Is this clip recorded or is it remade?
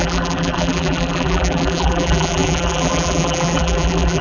remade